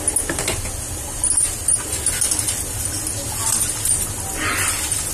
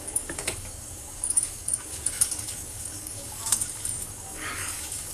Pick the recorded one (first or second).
first